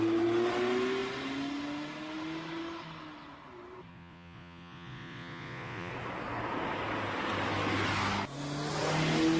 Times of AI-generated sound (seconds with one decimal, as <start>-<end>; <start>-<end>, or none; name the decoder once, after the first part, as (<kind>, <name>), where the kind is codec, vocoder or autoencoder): 3.9-5.9 (vocoder, Vocos)

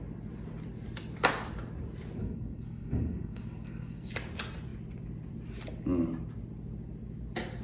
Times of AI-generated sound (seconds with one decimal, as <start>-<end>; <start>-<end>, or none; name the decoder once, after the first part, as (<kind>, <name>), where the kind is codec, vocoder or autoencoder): 2.2-4.1 (codec, SNAC)